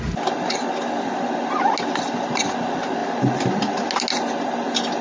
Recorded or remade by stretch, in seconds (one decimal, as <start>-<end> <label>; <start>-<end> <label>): 0.0-5.0 recorded